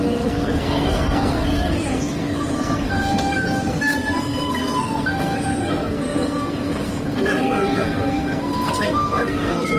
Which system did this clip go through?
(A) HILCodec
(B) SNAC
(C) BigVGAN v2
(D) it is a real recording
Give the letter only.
B